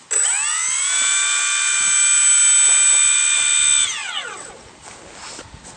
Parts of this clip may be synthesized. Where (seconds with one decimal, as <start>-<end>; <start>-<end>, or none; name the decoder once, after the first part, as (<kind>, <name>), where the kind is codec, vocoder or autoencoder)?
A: 4.0-4.5 (vocoder, WaveNeXt)